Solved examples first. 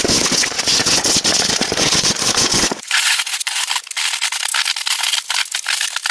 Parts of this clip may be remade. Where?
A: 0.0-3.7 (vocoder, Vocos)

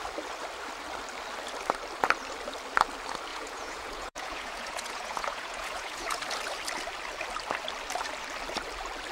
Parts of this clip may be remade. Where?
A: 3.3-6.2 (vocoder, Vocos)

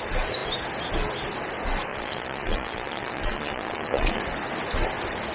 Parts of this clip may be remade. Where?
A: 1.9-4.2 (vocoder, Vocos)

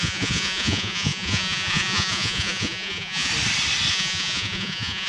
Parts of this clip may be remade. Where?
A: 0.0-3.3 (vocoder, Vocos); 3.9-5.1

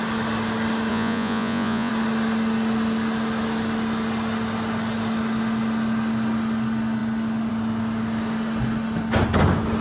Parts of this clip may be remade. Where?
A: 0.9-1.9 (vocoder, Vocos)

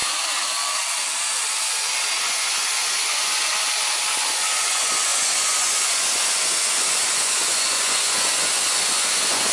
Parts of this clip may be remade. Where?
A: 2.2-3.5 (vocoder, Vocos); 4.2-9.5